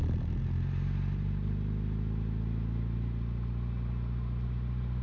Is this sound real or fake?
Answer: real